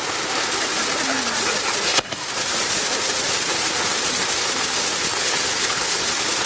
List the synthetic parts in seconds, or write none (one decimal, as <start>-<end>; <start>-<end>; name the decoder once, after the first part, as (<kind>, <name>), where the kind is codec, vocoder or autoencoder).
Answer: 5.1-6.0 (codec, HILCodec)